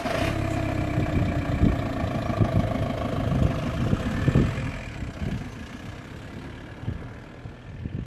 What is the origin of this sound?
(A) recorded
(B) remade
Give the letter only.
A